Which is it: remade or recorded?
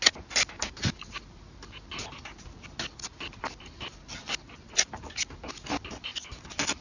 recorded